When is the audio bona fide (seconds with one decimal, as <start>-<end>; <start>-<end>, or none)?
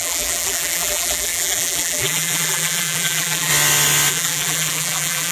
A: 3.5-4.1